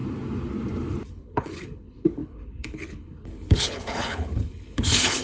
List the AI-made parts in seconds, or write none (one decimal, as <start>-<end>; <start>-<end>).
1.1-5.2